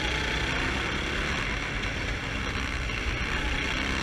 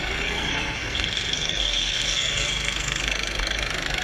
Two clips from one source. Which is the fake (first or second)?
second